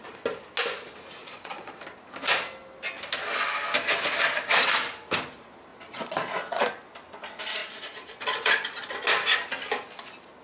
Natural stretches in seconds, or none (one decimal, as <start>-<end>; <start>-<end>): 0.0-1.2; 1.8-5.7; 6.6-7.6; 8.9-10.4